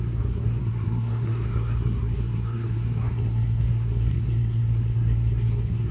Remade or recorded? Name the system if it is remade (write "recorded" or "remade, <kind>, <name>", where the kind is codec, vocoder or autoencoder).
remade, codec, SNAC